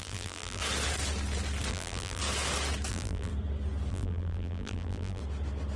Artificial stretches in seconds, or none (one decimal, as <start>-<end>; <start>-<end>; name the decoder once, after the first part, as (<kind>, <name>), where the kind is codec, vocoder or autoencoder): 0.0-0.6 (vocoder, BigVGAN v2); 1.7-2.2; 2.9-3.3; 3.9-5.2